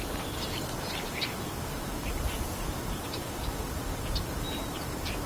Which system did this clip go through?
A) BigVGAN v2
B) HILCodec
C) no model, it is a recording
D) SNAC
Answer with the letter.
A